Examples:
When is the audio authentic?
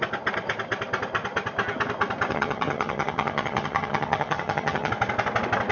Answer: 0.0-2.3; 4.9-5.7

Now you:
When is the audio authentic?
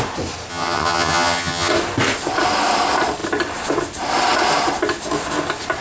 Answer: 0.0-0.5; 1.7-5.8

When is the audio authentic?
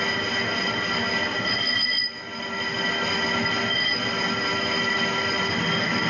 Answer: 0.0-6.1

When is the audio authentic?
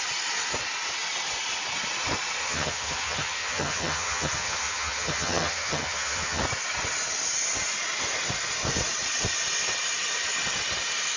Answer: 0.0-2.4; 6.4-11.2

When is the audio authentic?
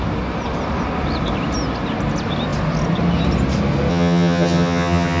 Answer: 0.0-3.9